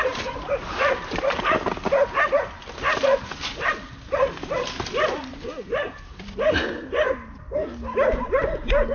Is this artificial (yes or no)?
no